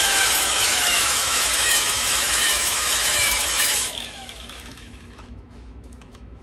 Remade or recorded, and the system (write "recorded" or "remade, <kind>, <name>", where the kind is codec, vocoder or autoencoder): remade, autoencoder, DAC-VAE